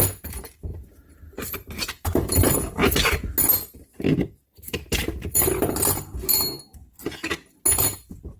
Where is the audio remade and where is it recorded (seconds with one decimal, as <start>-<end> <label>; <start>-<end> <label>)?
0.0-0.7 recorded; 0.7-2.5 remade; 2.5-4.2 recorded; 4.2-5.5 remade; 5.5-8.4 recorded